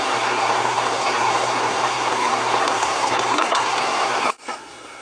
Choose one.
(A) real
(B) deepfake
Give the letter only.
B